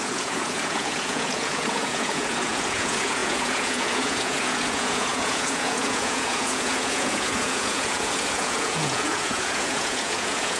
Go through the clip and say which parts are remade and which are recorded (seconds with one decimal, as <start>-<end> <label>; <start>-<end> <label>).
0.0-10.6 remade